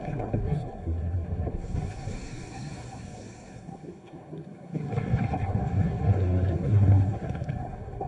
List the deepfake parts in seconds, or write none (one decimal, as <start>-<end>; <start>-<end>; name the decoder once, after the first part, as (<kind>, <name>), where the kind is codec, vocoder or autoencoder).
0.0-8.1 (codec, SNAC)